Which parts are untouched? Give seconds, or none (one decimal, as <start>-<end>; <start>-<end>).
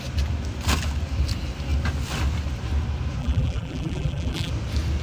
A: 0.0-3.2; 4.5-5.0